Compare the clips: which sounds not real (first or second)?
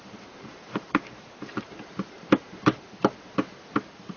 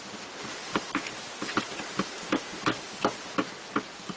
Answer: first